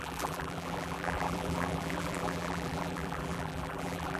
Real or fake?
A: fake